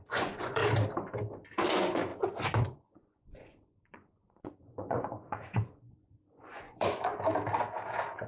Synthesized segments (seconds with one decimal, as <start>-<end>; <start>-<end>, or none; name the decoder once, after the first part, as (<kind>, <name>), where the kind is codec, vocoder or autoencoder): 0.0-0.6 (vocoder, Vocos); 1.7-2.1; 2.6-7.1

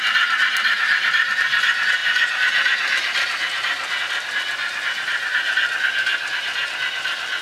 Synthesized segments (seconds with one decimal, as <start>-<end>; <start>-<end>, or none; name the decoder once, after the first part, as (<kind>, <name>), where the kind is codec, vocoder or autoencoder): none

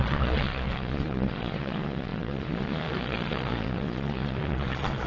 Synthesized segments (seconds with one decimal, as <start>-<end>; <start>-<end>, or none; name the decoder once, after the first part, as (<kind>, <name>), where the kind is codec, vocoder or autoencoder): 0.0-5.1 (vocoder, Vocos)